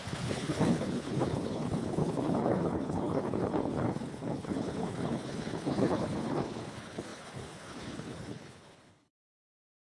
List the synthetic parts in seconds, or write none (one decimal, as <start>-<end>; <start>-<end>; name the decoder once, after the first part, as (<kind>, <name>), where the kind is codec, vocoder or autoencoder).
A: 0.0-9.9 (codec, HILCodec)